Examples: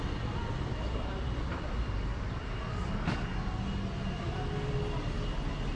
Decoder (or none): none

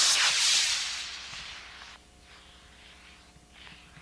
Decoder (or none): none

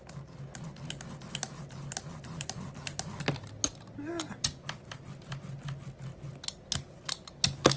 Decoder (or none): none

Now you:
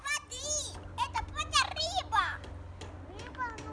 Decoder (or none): none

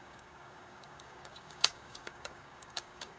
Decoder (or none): codec, DAC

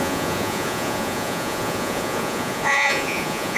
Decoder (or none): vocoder, Vocos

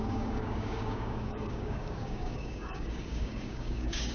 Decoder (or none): codec, DAC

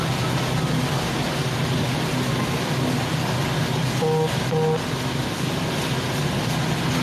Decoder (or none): none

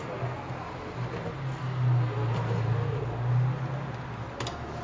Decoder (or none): none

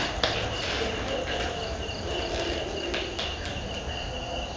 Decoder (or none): none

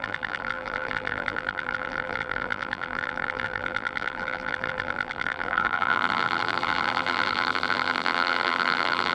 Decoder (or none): vocoder, BigVGAN v2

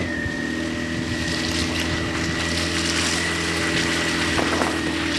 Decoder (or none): none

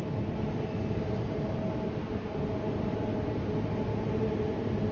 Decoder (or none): none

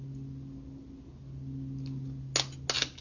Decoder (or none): none